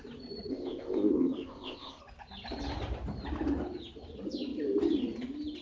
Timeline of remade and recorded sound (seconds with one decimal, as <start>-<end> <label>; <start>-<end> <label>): 0.0-0.5 recorded; 0.5-2.0 remade; 2.0-5.6 recorded